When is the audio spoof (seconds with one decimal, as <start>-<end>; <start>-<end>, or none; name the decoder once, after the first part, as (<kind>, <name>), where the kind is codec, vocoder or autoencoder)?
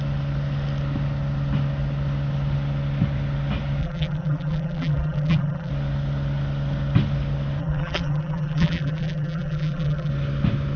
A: 3.8-5.7 (vocoder, BigVGAN v2); 7.6-10.1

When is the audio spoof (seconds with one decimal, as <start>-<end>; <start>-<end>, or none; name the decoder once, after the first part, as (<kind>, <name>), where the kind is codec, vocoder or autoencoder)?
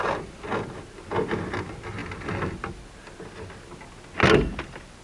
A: none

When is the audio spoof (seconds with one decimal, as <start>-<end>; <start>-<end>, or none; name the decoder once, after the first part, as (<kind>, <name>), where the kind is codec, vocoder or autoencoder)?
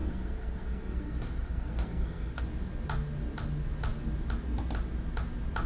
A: 0.0-2.4 (codec, SNAC)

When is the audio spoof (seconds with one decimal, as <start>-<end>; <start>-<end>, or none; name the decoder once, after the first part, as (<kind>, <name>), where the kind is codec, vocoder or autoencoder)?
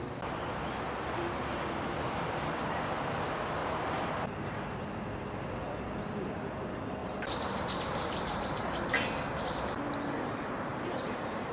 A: 3.6-4.8 (vocoder, BigVGAN v2); 7.0-8.6; 10.7-11.5